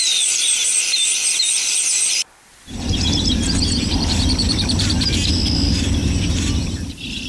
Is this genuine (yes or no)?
no